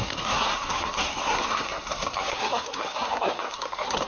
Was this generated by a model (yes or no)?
yes